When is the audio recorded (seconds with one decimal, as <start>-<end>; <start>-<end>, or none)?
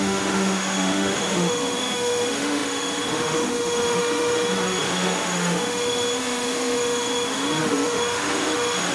none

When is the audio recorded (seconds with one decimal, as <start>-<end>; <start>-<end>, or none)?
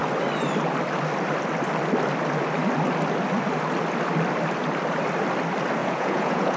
0.0-5.8